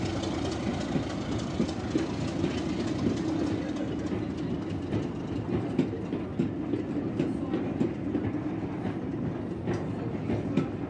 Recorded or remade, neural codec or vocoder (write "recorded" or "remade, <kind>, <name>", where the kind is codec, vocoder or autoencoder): recorded